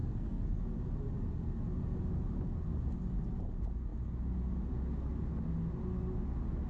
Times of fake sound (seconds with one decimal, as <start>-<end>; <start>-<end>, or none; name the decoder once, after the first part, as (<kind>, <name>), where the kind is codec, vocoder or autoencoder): 0.0-0.6 (codec, SNAC)